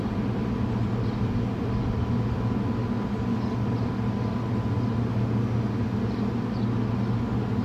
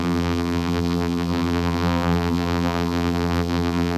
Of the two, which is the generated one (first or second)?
second